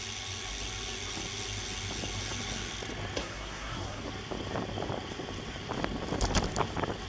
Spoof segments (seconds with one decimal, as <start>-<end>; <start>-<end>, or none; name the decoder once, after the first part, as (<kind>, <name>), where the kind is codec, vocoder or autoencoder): 3.2-4.0 (codec, SNAC)